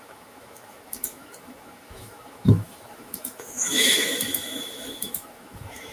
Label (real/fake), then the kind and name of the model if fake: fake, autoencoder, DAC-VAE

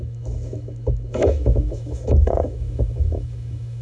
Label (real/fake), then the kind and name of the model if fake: fake, autoencoder, DAC-VAE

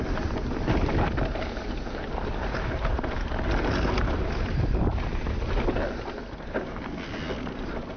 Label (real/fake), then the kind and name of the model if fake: real